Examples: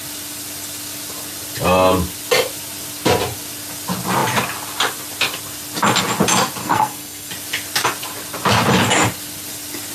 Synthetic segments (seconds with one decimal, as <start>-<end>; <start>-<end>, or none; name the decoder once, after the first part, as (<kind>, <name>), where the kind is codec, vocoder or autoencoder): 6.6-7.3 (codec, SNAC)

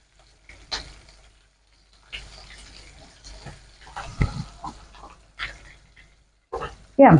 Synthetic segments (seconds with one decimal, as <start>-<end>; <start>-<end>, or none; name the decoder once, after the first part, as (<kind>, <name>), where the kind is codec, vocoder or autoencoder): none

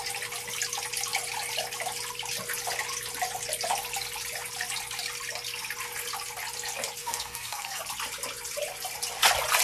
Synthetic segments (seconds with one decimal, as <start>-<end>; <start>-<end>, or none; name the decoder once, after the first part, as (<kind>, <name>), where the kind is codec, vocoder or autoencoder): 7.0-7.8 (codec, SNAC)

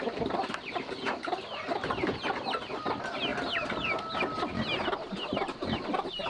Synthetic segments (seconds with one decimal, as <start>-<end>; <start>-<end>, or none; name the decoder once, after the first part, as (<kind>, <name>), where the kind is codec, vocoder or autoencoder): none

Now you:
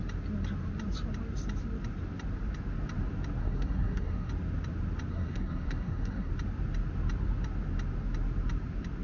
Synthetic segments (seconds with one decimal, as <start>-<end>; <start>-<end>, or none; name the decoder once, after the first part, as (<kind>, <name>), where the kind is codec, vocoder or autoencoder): 3.4-4.3 (codec, SNAC); 5.1-6.3